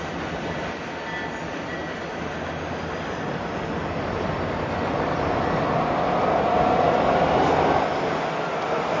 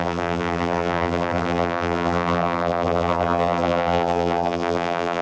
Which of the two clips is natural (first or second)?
first